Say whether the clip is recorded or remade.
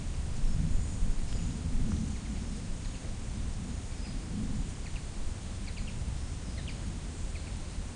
remade